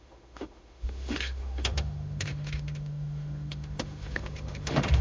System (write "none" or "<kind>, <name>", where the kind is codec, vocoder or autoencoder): autoencoder, DAC-VAE